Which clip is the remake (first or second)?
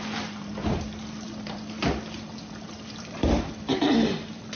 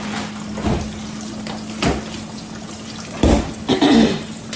first